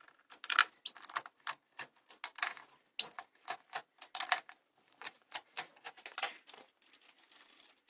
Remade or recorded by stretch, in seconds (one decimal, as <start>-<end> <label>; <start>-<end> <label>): 0.0-7.9 recorded